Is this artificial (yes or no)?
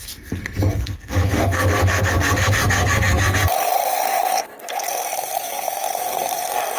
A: yes